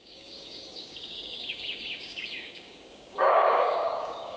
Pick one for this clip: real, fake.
fake